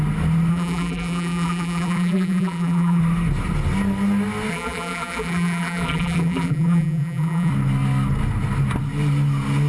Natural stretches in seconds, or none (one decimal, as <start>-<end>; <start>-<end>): 0.0-0.5; 3.0-4.5; 7.5-9.7